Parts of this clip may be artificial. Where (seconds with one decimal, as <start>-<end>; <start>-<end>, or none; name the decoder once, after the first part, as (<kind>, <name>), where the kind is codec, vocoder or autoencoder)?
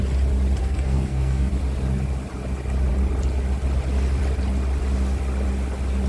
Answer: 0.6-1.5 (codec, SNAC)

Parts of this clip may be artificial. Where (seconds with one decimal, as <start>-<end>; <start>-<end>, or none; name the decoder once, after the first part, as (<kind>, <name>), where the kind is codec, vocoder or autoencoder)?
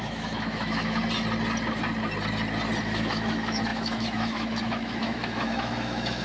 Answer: 0.0-1.0 (autoencoder, DAC-VAE); 2.8-6.2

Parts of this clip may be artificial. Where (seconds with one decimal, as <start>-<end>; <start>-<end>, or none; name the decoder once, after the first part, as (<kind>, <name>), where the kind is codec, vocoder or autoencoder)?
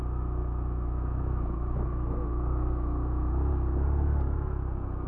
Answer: 0.4-3.5 (autoencoder, DAC-VAE)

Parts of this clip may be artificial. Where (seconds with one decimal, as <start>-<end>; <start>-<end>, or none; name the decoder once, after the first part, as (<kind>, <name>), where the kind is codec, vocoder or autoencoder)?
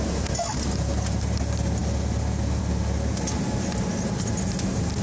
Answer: none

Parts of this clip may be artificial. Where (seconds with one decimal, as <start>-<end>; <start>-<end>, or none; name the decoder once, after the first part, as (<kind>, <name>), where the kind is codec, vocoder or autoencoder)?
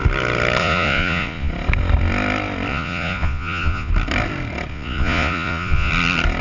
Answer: 0.6-1.5 (vocoder, Vocos); 2.7-3.9; 4.7-5.9